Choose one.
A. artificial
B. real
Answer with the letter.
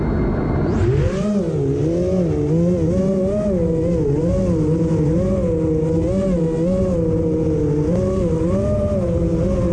B